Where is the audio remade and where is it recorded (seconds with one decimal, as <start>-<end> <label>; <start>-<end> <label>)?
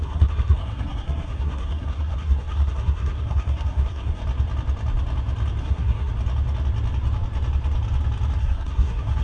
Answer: 0.0-4.2 remade; 4.2-5.6 recorded; 5.6-6.1 remade; 6.1-8.4 recorded; 8.4-9.2 remade